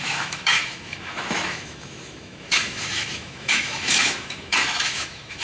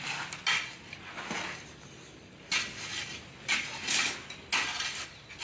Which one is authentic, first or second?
second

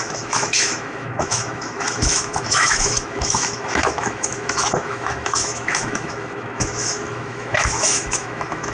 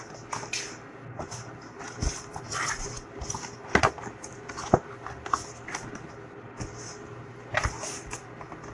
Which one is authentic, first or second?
second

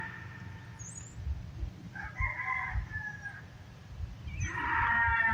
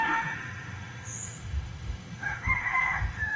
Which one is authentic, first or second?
first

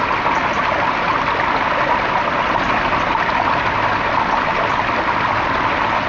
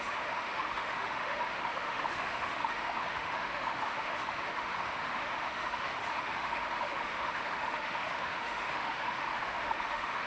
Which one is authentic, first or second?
first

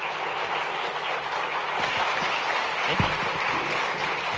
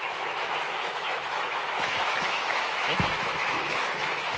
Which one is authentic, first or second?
first